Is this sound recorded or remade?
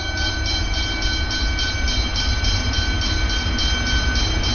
recorded